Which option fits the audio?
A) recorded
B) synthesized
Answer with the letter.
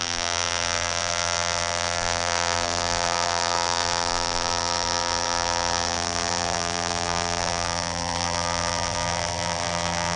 B